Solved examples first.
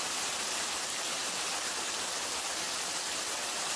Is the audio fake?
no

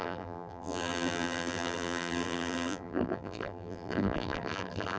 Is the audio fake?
yes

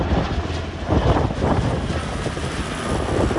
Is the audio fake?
no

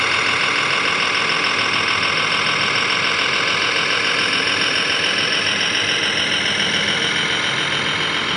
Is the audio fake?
no